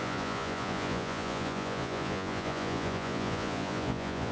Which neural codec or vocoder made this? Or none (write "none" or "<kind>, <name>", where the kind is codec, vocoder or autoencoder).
vocoder, Vocos